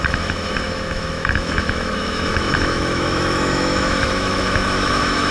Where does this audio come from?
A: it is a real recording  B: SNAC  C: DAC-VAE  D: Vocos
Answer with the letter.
C